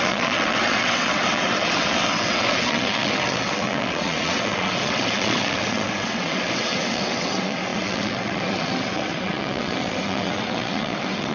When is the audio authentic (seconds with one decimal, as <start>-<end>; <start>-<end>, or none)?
none